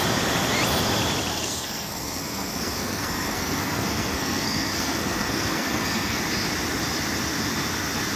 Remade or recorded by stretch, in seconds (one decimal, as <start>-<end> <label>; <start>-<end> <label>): 0.0-1.3 recorded; 1.3-6.2 remade; 6.2-8.2 recorded